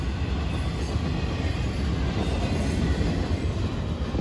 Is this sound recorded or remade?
recorded